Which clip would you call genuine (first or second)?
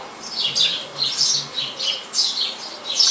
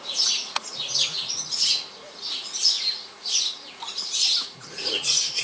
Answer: first